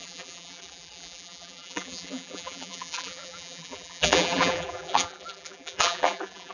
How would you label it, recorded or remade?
remade